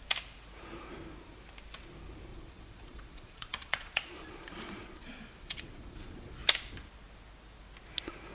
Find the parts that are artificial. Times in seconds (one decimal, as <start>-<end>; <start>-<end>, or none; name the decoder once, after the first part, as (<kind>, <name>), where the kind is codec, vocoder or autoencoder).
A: 2.3-6.3 (vocoder, Vocos)